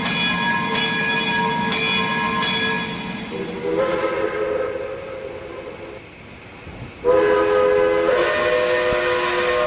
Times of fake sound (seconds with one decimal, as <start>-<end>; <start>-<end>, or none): none